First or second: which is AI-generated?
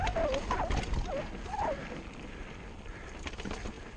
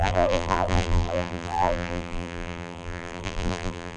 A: second